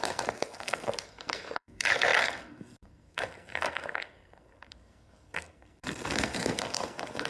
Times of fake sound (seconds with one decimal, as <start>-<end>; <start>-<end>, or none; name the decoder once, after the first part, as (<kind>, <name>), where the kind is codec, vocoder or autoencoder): 0.0-7.3 (codec, SNAC)